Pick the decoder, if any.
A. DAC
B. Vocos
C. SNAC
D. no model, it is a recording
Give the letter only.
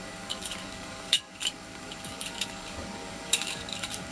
A